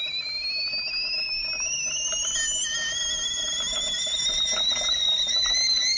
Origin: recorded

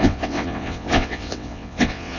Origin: remade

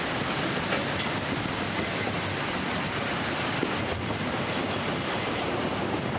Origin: remade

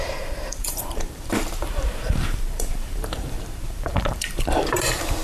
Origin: remade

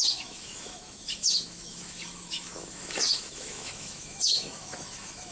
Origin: remade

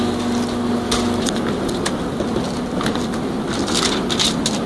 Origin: recorded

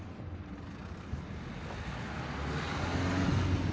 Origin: recorded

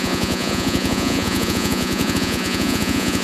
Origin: remade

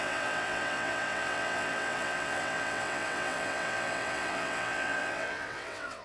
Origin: remade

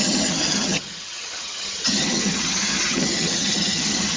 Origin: remade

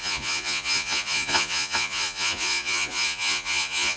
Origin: remade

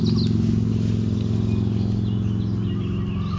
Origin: recorded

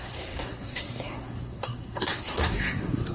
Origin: remade